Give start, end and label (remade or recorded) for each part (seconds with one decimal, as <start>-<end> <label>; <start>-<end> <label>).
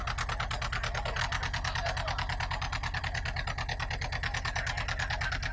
0.0-5.5 recorded